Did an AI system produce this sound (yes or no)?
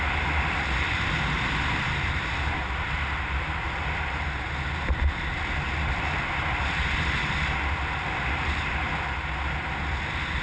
no